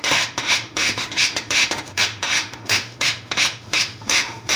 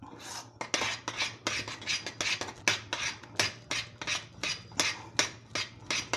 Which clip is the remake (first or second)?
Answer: first